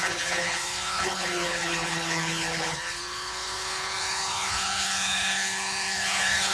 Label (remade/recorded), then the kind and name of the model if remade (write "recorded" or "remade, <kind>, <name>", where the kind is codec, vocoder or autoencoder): remade, codec, HILCodec